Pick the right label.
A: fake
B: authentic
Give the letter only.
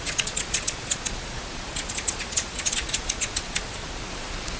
A